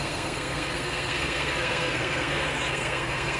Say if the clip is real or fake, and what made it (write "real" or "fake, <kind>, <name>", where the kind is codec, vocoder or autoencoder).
fake, codec, SNAC